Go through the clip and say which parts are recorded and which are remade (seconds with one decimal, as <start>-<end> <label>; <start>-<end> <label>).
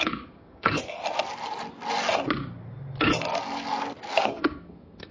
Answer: 0.0-1.0 remade; 1.0-4.1 recorded; 4.1-5.1 remade